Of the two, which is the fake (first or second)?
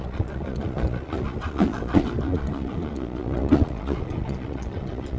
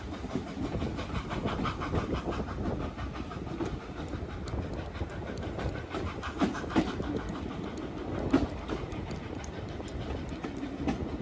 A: first